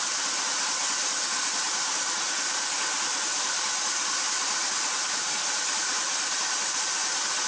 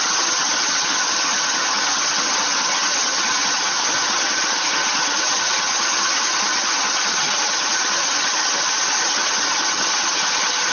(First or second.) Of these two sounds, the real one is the first